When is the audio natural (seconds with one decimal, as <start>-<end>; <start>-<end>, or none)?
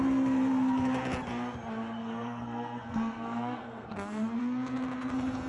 0.0-2.0; 4.4-5.5